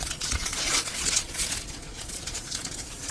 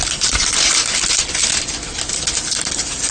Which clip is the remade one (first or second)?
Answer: first